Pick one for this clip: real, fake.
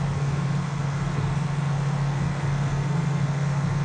fake